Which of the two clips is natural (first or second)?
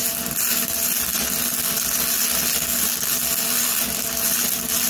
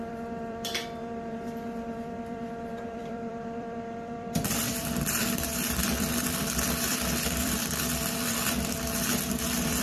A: first